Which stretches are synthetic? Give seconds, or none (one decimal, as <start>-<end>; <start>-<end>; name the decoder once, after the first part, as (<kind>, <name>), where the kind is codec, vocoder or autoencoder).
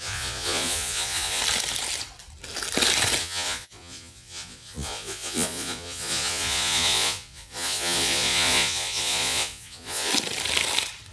0.0-1.4 (vocoder, Vocos); 3.2-10.1